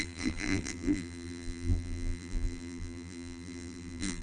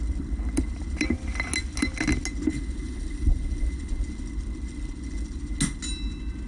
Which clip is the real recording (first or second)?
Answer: second